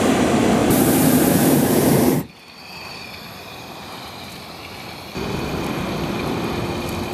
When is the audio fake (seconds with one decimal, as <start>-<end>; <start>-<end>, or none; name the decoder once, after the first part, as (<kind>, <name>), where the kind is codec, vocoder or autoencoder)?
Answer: 0.6-2.3 (vocoder, BigVGAN v2)